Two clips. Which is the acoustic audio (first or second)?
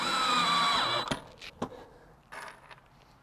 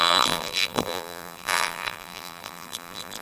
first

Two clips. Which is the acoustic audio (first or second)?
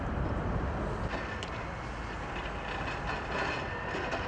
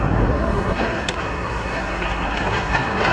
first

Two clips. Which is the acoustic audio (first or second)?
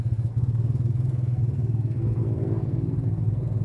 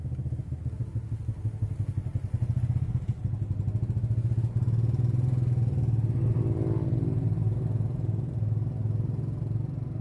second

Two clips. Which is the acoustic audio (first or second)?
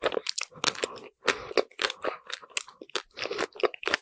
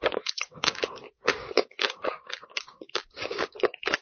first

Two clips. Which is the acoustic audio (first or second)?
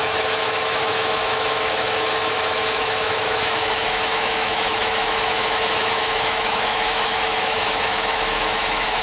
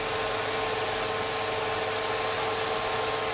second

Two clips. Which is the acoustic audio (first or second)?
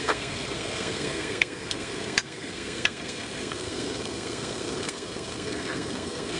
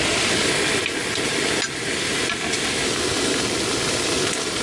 second